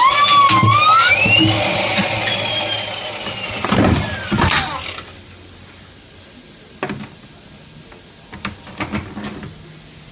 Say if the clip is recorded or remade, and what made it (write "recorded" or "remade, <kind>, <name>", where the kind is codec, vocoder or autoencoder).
recorded